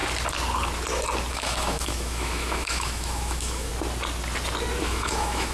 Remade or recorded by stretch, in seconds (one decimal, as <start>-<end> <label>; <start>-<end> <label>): 0.0-1.3 recorded; 1.3-3.7 remade; 3.7-4.8 recorded; 4.8-5.5 remade

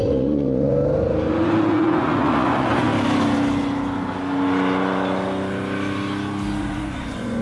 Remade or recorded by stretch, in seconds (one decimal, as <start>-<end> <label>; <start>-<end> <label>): 0.0-0.7 remade; 0.7-1.3 recorded; 1.3-2.9 remade; 2.9-6.6 recorded; 6.6-7.4 remade